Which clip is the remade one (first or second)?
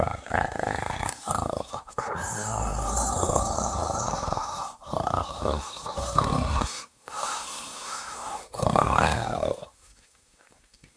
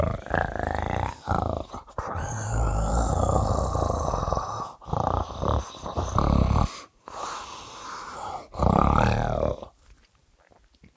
first